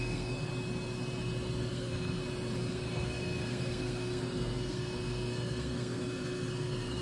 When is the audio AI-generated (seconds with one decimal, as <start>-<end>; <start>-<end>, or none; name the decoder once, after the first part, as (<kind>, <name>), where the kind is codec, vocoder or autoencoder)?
0.0-0.5 (codec, SNAC); 1.7-2.2; 2.7-7.0